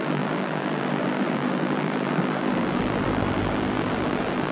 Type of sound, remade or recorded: remade